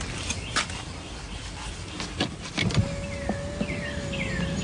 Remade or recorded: recorded